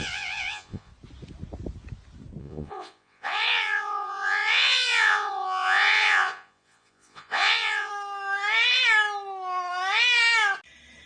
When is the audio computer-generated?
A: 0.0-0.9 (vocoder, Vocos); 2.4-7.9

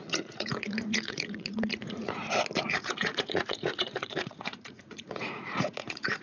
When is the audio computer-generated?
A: 0.0-2.2 (vocoder, Vocos); 2.7-6.2

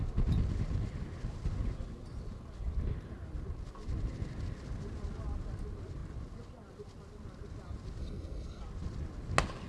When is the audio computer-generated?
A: 8.0-8.6 (codec, SNAC)

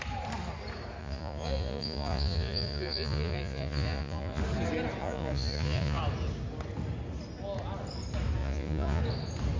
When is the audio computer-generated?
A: 1.0-4.4 (vocoder, Vocos); 5.0-6.0; 8.4-9.0

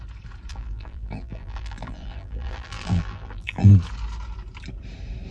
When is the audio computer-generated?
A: 0.5-3.7 (vocoder, BigVGAN v2)

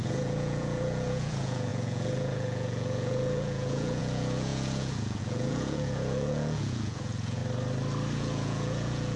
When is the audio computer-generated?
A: 0.0-7.4 (vocoder, Vocos); 8.2-9.2

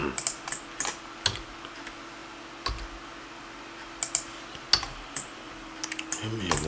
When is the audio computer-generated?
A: none

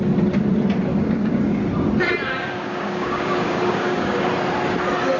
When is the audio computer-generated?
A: 0.9-1.6 (codec, DAC); 2.4-4.3